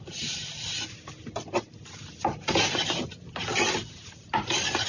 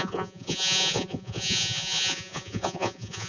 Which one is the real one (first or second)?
first